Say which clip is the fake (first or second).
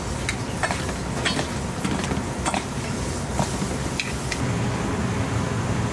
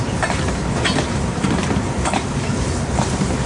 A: second